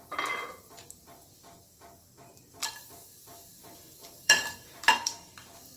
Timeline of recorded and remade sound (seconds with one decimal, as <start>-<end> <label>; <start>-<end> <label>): 0.0-4.0 recorded; 4.0-5.3 remade; 5.3-5.8 recorded